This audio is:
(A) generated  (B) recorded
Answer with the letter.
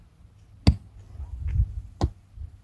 B